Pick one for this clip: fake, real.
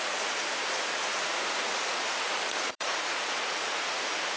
fake